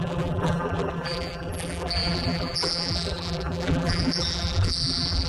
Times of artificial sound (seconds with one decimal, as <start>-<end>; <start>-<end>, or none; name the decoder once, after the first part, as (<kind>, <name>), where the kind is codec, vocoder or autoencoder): 0.0-5.3 (vocoder, BigVGAN v2)